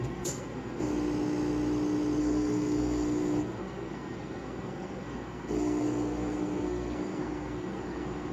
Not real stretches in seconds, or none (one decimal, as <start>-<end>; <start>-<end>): 0.0-0.9; 2.2-8.3

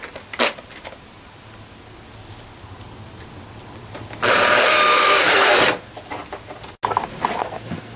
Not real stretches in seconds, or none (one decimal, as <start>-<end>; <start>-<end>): 4.9-5.5; 7.4-8.0